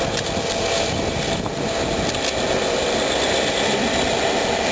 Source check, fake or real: real